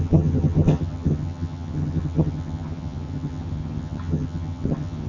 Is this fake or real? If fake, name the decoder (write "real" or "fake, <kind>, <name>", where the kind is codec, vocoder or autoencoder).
fake, vocoder, HiFi-GAN